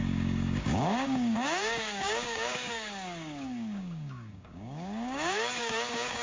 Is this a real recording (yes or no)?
no